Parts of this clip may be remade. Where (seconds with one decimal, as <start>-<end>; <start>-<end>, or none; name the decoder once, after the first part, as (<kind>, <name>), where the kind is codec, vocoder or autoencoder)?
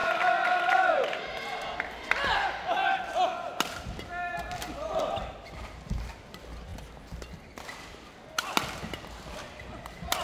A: none